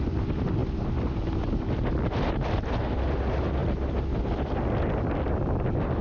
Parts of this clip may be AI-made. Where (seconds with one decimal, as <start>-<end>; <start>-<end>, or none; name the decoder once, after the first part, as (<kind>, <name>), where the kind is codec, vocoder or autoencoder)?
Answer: none